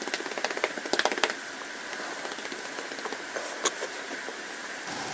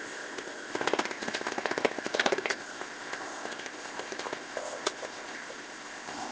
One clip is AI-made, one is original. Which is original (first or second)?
first